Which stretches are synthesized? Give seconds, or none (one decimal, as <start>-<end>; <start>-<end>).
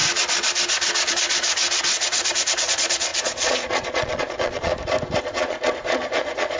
1.1-1.6; 2.6-4.7; 5.2-6.6